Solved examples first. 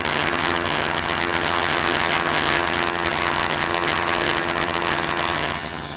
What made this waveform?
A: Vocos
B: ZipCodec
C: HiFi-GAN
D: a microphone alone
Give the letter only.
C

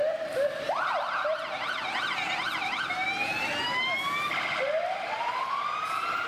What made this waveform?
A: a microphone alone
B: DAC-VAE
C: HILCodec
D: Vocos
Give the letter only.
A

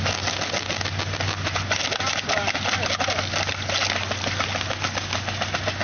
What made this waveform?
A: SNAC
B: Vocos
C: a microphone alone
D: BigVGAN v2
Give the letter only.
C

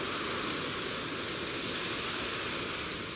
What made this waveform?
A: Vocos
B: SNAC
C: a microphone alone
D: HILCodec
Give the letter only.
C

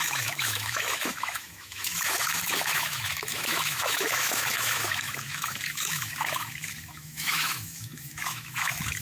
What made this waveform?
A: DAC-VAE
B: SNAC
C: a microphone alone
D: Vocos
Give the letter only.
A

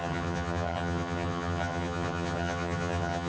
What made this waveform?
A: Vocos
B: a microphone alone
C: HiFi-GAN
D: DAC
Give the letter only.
C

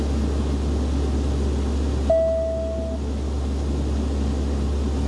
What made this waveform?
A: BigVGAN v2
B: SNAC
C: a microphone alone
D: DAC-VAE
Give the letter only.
C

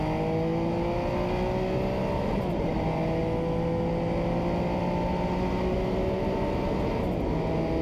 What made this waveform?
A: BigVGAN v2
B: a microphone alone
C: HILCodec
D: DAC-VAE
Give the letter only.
B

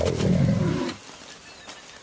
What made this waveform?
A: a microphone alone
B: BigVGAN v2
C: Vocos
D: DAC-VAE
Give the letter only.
A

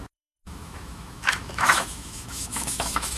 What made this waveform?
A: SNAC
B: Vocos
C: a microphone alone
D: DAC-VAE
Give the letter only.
D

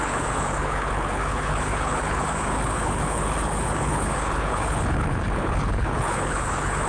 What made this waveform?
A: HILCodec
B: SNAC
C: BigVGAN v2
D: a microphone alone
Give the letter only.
A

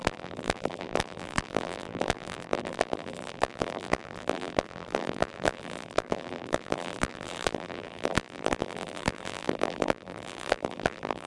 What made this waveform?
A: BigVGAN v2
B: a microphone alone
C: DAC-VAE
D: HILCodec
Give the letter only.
A